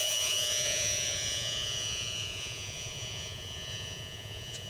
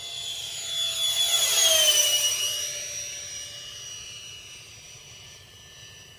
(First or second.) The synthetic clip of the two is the first